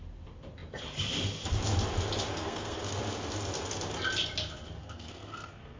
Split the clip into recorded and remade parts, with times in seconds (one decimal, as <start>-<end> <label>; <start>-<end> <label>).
0.0-2.3 recorded; 2.3-3.0 remade; 3.0-4.8 recorded; 4.8-5.8 remade